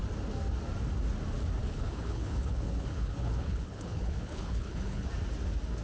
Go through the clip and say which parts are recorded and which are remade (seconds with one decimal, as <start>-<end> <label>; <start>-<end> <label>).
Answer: 0.0-1.6 recorded; 1.6-5.1 remade; 5.1-5.8 recorded

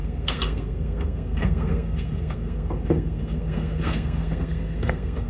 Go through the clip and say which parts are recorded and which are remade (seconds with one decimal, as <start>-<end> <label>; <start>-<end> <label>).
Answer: 0.0-5.3 remade